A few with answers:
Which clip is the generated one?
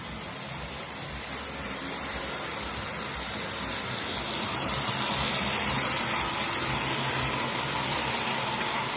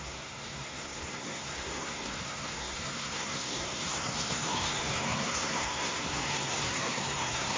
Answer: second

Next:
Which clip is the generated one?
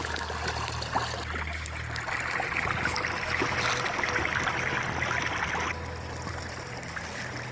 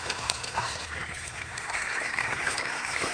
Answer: second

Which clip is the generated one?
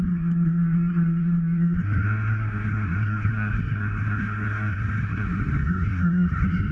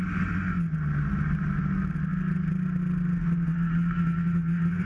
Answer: first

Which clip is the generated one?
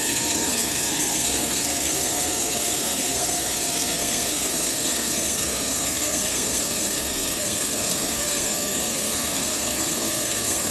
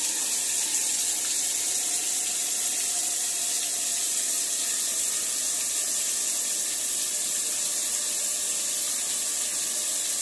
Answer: first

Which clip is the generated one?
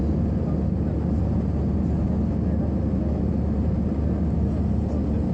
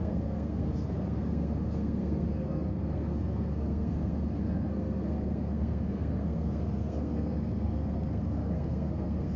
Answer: second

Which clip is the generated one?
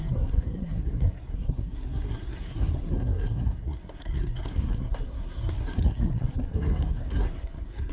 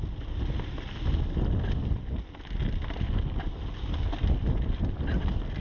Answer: first